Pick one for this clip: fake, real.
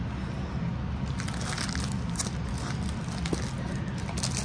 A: real